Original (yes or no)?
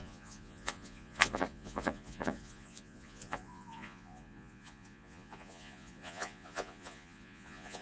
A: no